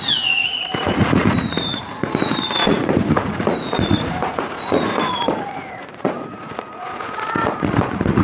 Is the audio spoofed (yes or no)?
yes